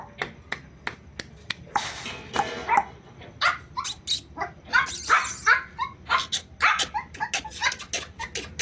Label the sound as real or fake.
real